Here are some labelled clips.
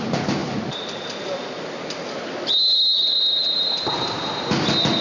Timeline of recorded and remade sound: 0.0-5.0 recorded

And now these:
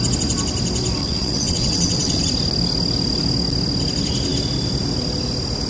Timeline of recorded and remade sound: 0.0-1.0 recorded; 1.0-2.2 remade; 2.2-5.7 recorded

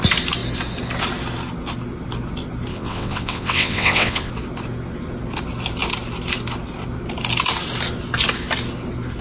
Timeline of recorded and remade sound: 0.0-2.7 recorded; 2.7-4.3 remade; 4.3-9.2 recorded

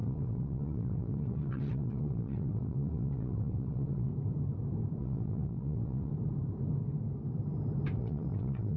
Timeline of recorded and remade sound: 0.0-4.1 remade; 4.1-5.0 recorded; 5.0-6.1 remade; 6.1-8.0 recorded; 8.0-8.8 remade

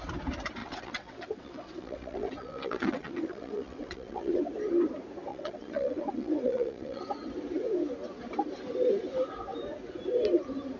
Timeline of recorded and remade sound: 0.0-0.6 recorded; 0.6-4.4 remade; 4.4-5.3 recorded; 5.3-7.0 remade; 7.0-10.8 recorded

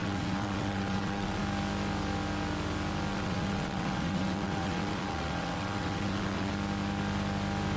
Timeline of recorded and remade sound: 0.0-1.4 remade; 1.4-3.1 recorded; 3.1-6.5 remade; 6.5-7.8 recorded

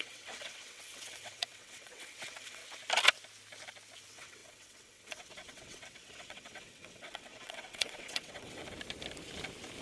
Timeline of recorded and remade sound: 0.0-2.6 remade; 2.6-4.0 recorded; 4.0-8.6 remade; 8.6-9.8 recorded